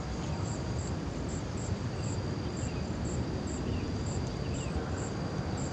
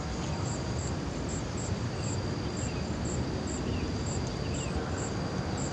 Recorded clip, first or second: second